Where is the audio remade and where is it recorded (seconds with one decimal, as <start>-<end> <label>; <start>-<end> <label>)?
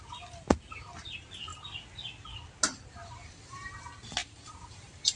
0.0-3.2 recorded; 3.2-3.8 remade; 3.8-4.2 recorded; 4.2-5.2 remade